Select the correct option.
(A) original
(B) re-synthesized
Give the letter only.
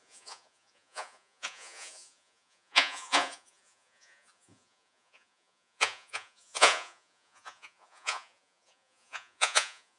B